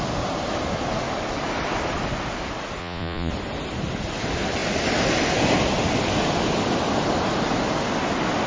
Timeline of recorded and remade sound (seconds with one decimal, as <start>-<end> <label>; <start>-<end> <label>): 0.0-2.8 recorded; 2.8-3.3 remade; 3.3-8.5 recorded